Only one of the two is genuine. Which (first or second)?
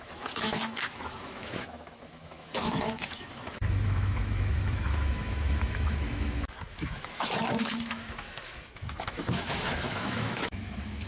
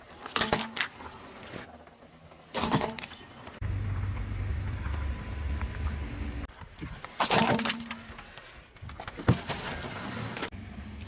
second